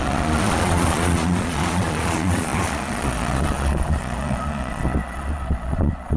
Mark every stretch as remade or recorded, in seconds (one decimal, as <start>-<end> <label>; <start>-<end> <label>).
0.0-6.2 remade